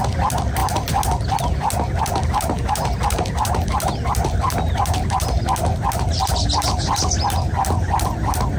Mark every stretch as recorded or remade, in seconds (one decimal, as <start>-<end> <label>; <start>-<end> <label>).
0.0-8.6 recorded